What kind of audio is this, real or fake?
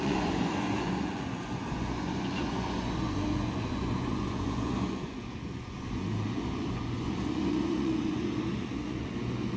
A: fake